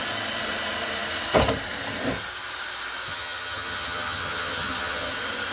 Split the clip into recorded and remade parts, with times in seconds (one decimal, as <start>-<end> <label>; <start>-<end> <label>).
0.0-3.1 recorded; 3.1-5.1 remade; 5.1-5.5 recorded